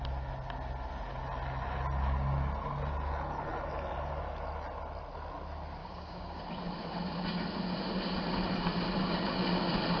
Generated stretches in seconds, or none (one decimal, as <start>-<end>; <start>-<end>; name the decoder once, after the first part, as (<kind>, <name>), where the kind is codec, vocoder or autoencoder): 5.8-6.4 (codec, DAC)